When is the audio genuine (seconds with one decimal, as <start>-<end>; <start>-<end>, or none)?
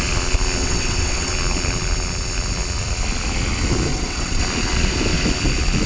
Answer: 0.0-0.6; 1.3-3.9; 4.4-5.9